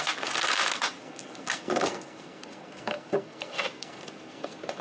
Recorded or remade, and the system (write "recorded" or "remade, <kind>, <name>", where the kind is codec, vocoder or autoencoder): remade, codec, SNAC